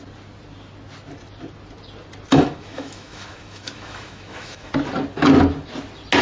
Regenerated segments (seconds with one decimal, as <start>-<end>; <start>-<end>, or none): 2.3-4.7